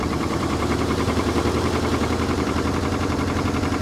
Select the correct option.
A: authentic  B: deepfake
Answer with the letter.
B